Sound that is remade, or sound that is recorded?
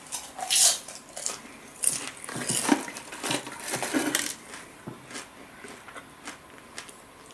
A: recorded